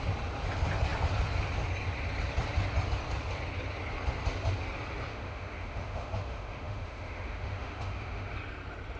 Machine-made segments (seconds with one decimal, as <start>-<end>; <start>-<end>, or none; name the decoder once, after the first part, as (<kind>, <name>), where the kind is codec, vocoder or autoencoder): 5.1-8.3 (autoencoder, DAC-VAE)